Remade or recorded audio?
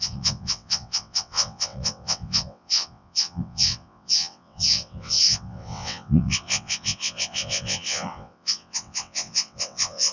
remade